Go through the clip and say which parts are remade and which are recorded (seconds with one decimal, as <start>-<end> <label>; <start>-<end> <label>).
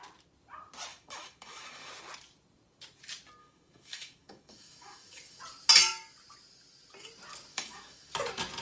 0.0-0.9 recorded; 0.9-1.9 remade; 1.9-3.4 recorded; 3.4-5.4 remade; 5.4-7.5 recorded; 7.5-8.1 remade; 8.1-8.6 recorded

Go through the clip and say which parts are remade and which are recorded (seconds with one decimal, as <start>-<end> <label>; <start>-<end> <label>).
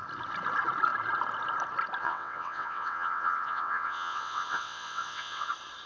0.0-2.0 recorded; 2.0-5.5 remade; 5.5-5.9 recorded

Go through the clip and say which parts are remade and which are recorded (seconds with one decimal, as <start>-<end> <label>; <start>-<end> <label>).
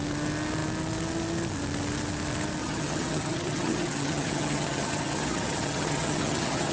0.0-2.6 recorded; 2.6-6.7 remade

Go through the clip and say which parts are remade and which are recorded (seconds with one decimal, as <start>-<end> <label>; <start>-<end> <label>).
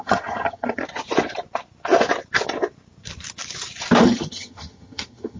0.0-0.8 remade; 0.8-4.0 recorded; 4.0-5.4 remade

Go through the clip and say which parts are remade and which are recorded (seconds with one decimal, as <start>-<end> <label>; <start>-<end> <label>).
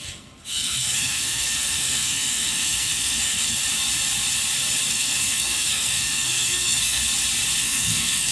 0.0-3.6 remade; 3.6-4.9 recorded; 4.9-7.0 remade; 7.0-7.6 recorded; 7.6-8.3 remade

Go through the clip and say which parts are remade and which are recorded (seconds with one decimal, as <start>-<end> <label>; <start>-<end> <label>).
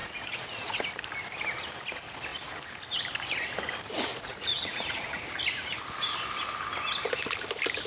0.0-0.8 remade; 0.8-4.1 recorded; 4.1-5.4 remade; 5.4-7.9 recorded